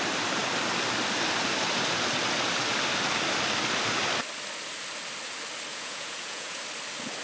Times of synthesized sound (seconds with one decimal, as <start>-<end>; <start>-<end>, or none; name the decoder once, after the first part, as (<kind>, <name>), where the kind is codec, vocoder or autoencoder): 5.7-6.6 (vocoder, Vocos)